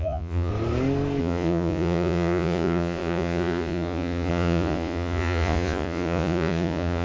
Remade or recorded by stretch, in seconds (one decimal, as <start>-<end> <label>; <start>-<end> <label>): 0.0-0.5 remade; 0.5-1.2 recorded; 1.2-7.0 remade